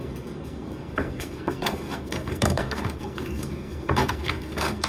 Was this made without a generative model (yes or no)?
no